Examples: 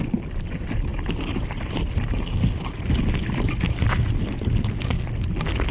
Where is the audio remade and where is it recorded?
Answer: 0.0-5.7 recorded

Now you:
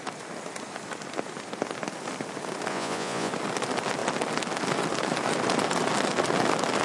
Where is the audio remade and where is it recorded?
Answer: 0.0-2.7 recorded; 2.7-3.3 remade; 3.3-6.8 recorded

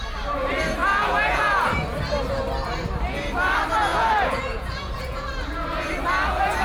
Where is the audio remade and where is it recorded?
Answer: 0.0-0.8 recorded; 0.8-1.7 remade; 1.7-3.9 recorded; 3.9-5.3 remade; 5.3-6.6 recorded

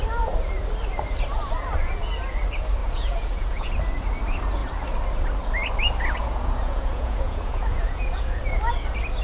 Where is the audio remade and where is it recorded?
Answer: 0.0-2.8 recorded; 2.8-3.7 remade; 3.7-6.2 recorded; 6.2-8.4 remade; 8.4-9.2 recorded

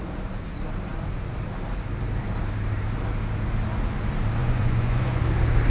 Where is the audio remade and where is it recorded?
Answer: 0.0-4.4 recorded; 4.4-5.2 remade; 5.2-5.7 recorded